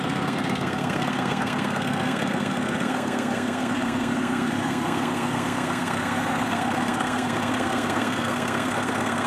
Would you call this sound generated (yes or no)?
yes